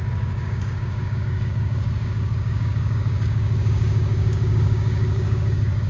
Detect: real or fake fake